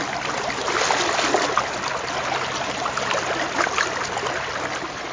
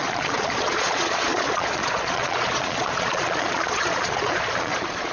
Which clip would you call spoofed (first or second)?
second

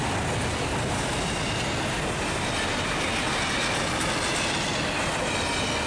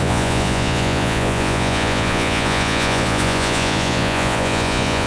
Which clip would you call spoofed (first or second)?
second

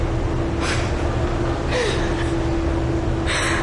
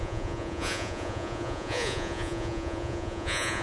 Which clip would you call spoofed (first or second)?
second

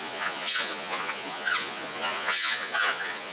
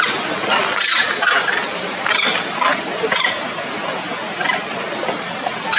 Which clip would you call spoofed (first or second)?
first